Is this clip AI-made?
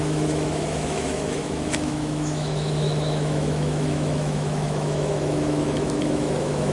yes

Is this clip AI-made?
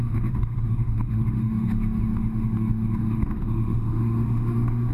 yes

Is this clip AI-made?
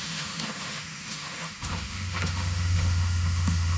yes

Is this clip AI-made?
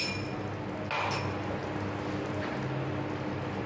no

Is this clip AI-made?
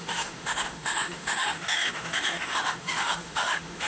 yes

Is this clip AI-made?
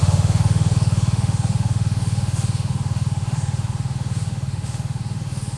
yes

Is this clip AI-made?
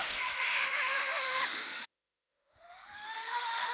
yes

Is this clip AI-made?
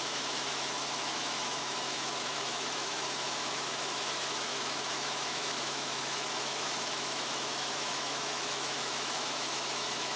yes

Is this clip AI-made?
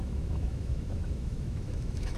yes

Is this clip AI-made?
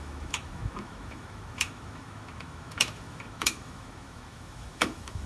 yes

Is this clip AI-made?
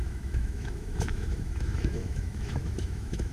yes